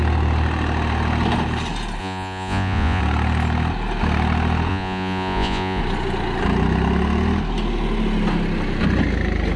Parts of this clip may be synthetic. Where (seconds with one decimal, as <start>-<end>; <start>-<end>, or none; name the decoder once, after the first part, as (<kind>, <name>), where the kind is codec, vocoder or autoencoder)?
2.0-3.0 (vocoder, Vocos); 4.7-5.8